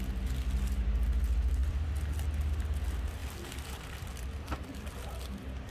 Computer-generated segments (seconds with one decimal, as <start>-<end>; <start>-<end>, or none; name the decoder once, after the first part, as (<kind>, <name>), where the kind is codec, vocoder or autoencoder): 1.6-2.2 (vocoder, BigVGAN v2); 3.2-4.9

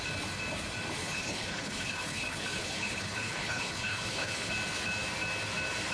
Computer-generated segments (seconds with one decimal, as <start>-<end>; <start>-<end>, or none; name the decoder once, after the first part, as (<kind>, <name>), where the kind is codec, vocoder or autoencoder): 1.0-4.5 (codec, HILCodec)

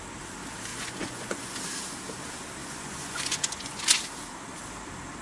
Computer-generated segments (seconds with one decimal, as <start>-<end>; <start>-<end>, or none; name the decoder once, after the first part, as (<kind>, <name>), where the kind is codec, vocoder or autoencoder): 0.7-1.6 (vocoder, Vocos); 2.6-3.8